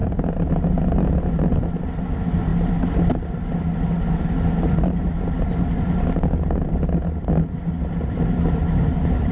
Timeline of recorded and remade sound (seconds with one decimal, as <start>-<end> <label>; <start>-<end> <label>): 0.0-9.3 recorded